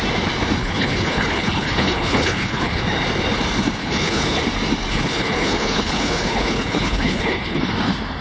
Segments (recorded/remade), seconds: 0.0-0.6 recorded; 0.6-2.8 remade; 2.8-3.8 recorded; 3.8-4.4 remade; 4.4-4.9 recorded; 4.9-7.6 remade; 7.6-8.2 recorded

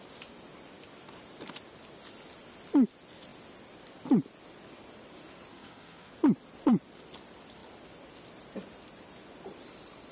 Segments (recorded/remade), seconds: 0.0-5.5 recorded; 5.5-6.1 remade; 6.1-10.1 recorded